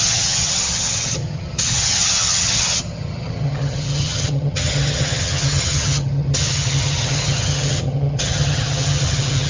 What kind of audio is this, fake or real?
fake